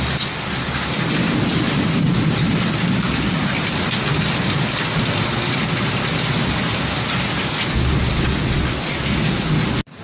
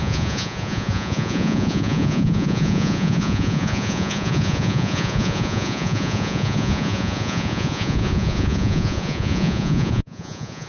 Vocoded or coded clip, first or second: second